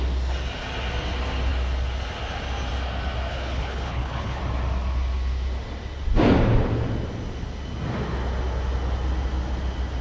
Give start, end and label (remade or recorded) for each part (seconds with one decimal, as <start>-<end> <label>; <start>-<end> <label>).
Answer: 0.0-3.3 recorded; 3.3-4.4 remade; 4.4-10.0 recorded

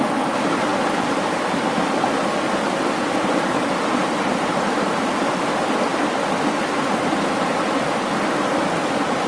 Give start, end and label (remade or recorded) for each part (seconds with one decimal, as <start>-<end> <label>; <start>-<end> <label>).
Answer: 0.0-0.7 recorded; 0.7-5.0 remade; 5.0-9.3 recorded

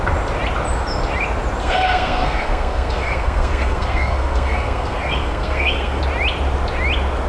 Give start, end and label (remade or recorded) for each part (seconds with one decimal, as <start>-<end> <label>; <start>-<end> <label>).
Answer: 0.0-1.6 recorded; 1.6-6.0 remade; 6.0-7.3 recorded

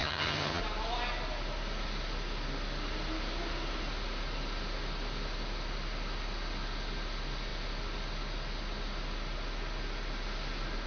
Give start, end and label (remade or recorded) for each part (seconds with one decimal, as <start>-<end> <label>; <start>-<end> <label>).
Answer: 0.0-0.6 remade; 0.6-10.9 recorded